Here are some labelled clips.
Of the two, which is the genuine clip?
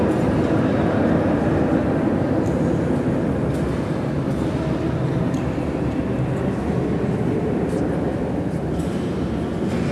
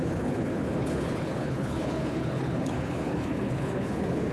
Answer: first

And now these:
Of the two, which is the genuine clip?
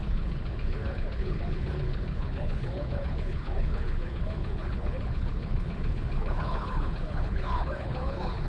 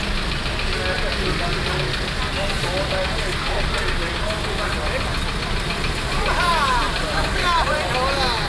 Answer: second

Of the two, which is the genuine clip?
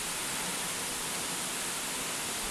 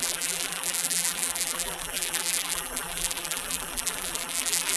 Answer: first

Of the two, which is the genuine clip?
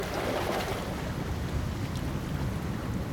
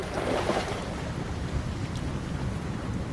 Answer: first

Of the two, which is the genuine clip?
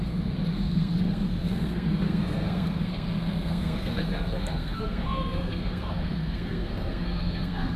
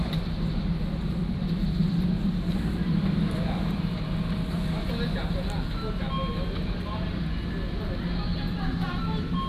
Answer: second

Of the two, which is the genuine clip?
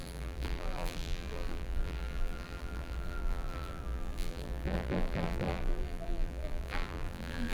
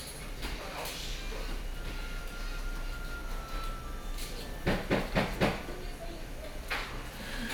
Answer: second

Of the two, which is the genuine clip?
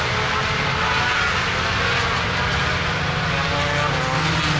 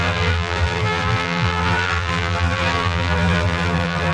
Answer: first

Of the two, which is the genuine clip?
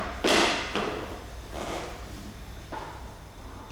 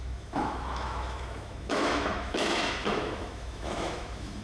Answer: first